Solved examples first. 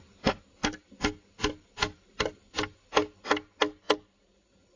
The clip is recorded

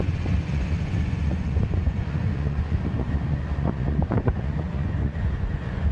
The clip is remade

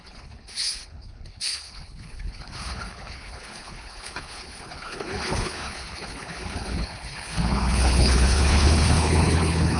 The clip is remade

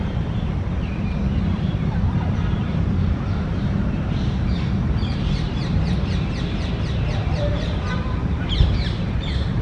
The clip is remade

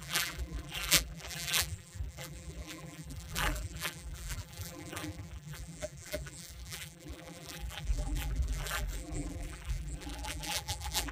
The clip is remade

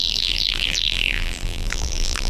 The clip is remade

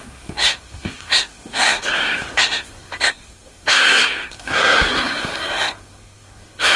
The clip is remade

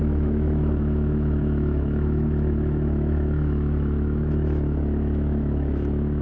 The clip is remade